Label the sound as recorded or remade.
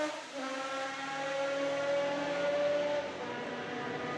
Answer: recorded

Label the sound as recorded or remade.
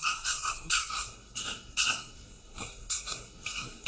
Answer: remade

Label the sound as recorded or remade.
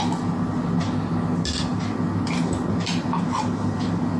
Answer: recorded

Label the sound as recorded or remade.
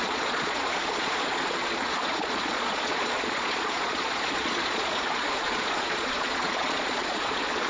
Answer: remade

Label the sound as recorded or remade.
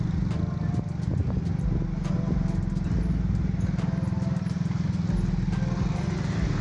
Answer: recorded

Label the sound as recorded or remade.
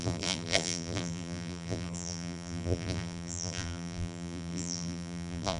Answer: remade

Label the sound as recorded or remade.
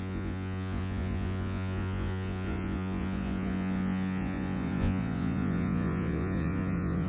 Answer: remade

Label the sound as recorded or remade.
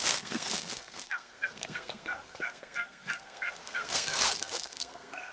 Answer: remade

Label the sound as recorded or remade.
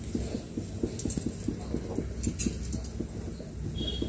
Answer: recorded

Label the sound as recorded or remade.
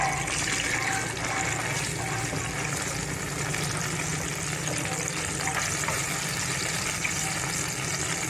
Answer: recorded